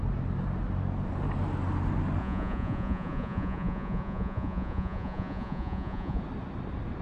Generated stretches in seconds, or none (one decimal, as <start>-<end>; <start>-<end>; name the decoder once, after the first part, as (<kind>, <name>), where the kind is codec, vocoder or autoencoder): 2.2-6.2 (vocoder, Vocos)